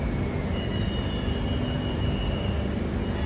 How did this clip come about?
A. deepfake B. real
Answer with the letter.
B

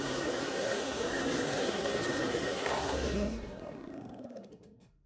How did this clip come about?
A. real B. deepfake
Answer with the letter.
B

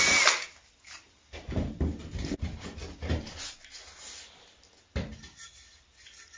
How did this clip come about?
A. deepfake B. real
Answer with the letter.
B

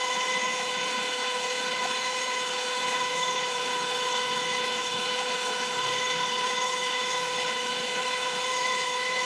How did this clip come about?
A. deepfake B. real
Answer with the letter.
A